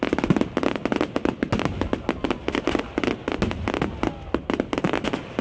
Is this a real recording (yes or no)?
yes